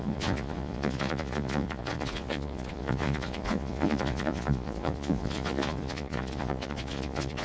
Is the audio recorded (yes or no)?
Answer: no